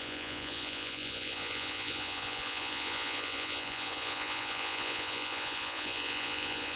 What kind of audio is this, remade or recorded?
remade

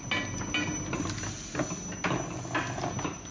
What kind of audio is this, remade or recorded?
recorded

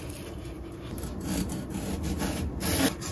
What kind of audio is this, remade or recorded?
recorded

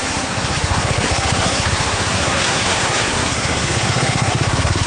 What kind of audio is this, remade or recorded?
remade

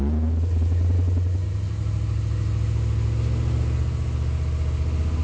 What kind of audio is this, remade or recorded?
recorded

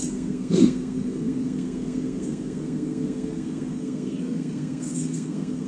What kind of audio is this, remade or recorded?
remade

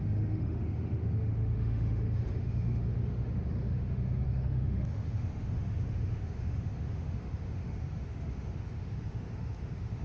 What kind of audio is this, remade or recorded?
remade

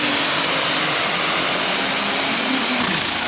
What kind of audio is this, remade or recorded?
recorded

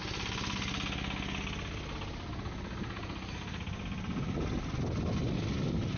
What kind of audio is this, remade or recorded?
recorded